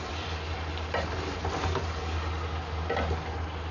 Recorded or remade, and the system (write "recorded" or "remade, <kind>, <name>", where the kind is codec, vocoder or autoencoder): recorded